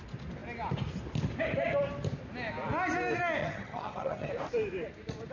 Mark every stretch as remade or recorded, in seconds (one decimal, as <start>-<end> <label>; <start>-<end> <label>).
0.0-3.4 recorded; 3.4-4.3 remade; 4.3-5.3 recorded